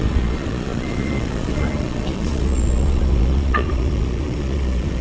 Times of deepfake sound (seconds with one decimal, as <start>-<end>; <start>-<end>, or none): 0.0-5.0